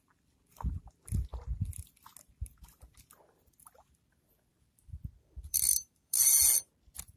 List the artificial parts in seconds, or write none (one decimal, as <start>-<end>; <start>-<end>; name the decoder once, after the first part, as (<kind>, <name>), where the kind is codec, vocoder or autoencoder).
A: 4.5-6.2 (vocoder, BigVGAN v2)